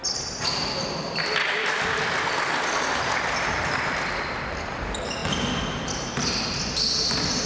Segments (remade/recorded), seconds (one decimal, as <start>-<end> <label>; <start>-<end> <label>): 0.0-7.5 recorded